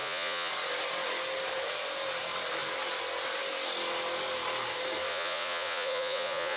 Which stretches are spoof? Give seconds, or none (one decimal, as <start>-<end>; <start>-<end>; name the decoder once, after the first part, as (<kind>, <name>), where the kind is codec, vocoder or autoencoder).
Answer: 0.0-0.5 (vocoder, Vocos); 5.1-6.6